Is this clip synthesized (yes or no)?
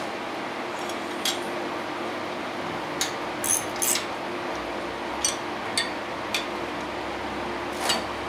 no